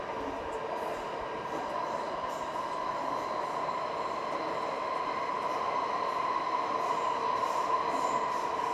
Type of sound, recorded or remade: recorded